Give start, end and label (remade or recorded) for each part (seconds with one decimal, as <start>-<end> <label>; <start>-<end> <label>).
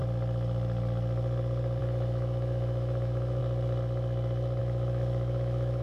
0.0-1.8 recorded; 1.8-3.4 remade; 3.4-4.6 recorded; 4.6-5.8 remade